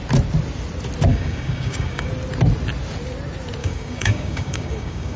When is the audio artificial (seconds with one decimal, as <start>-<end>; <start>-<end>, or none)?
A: 1.1-2.1; 3.6-5.2